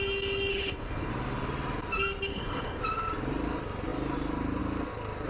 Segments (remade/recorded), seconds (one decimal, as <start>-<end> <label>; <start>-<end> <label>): 0.0-0.5 recorded; 0.5-1.1 remade; 1.1-2.3 recorded; 2.3-2.8 remade; 2.8-5.3 recorded